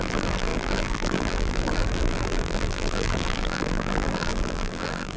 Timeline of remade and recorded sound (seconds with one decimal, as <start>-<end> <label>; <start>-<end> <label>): 0.0-5.2 remade